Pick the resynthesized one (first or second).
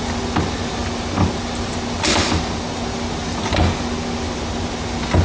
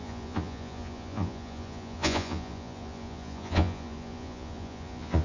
second